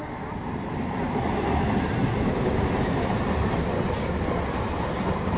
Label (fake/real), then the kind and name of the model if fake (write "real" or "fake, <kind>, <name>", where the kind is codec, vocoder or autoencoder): real